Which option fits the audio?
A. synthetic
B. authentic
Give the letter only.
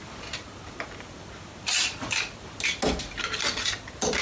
B